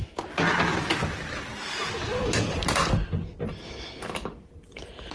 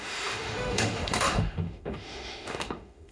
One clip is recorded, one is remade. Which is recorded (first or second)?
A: first